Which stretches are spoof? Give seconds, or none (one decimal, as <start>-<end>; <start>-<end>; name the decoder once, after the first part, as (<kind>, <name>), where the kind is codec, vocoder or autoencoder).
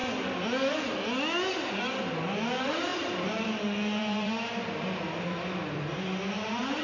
2.9-6.8 (vocoder, BigVGAN v2)